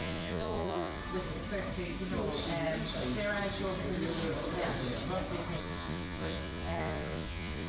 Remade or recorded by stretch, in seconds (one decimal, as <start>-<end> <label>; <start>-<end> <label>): 0.0-1.0 remade; 1.0-5.6 recorded; 5.6-7.7 remade